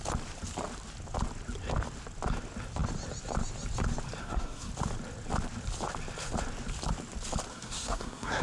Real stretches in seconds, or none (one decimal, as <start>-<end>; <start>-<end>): 0.0-4.2; 4.7-7.5